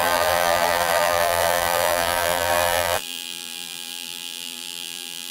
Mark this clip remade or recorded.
remade